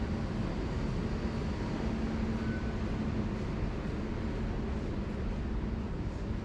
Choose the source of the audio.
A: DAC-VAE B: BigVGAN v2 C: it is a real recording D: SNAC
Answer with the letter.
C